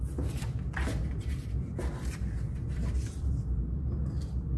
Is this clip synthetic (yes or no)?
no